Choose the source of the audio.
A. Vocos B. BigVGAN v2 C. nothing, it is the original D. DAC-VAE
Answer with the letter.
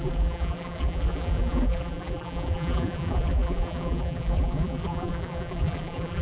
B